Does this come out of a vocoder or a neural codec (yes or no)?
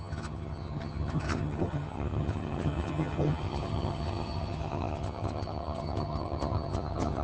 yes